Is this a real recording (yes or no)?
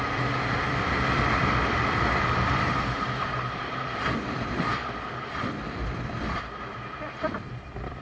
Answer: no